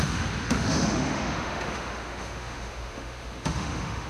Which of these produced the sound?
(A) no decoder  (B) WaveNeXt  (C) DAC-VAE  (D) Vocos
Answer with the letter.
C